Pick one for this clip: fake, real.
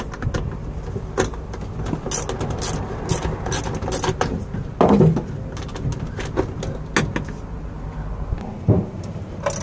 real